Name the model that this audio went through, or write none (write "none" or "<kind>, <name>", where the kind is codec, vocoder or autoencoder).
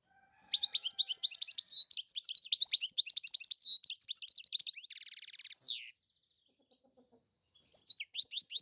none